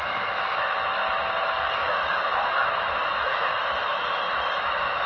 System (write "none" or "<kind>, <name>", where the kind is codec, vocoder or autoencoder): autoencoder, DAC-VAE